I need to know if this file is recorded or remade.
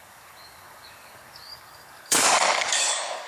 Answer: remade